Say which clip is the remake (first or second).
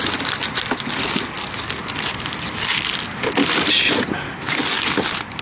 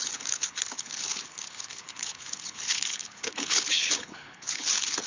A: second